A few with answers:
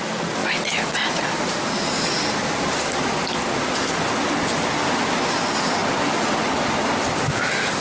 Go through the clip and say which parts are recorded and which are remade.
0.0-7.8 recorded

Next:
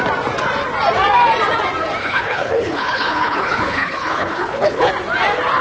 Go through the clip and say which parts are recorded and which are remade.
0.0-2.0 recorded; 2.0-4.9 remade; 4.9-5.6 recorded

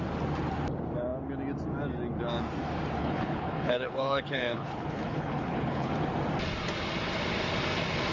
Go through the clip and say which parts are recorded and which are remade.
0.0-3.0 recorded; 3.0-5.9 remade; 5.9-8.1 recorded